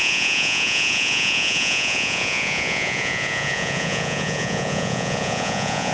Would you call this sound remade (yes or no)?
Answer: yes